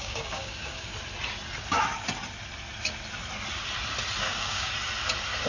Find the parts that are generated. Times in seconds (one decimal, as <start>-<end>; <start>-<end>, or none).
0.0-0.9; 4.2-4.7